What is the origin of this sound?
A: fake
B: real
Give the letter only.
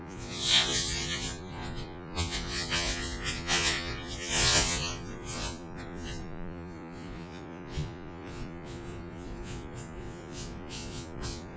A